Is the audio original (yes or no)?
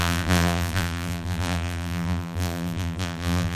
no